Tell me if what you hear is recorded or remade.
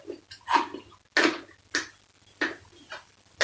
recorded